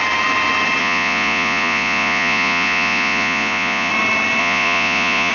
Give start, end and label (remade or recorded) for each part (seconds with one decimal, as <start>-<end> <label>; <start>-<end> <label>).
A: 0.0-0.8 recorded; 0.8-3.9 remade; 3.9-4.4 recorded; 4.4-5.3 remade